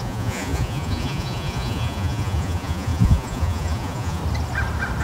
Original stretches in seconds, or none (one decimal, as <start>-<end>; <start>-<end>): 4.2-5.0